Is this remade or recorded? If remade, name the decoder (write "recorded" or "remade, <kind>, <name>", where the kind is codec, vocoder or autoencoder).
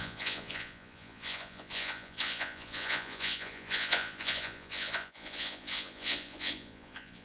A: remade, vocoder, Vocos